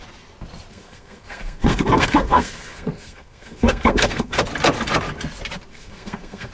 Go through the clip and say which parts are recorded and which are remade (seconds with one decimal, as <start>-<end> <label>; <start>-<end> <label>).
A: 0.0-0.7 recorded; 0.7-4.4 remade; 4.4-5.7 recorded; 5.7-6.5 remade